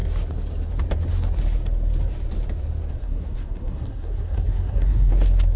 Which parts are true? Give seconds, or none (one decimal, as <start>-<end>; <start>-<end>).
0.0-3.0; 5.1-5.6